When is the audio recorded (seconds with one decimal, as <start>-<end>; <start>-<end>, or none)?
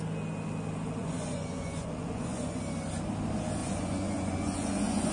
0.0-1.0; 2.6-3.6